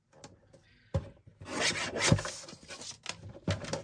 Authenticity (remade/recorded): recorded